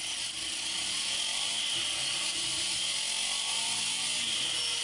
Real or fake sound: real